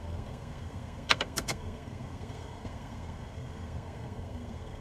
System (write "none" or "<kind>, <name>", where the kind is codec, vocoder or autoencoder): codec, SNAC